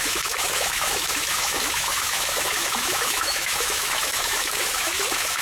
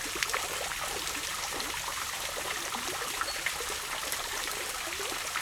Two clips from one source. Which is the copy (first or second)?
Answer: first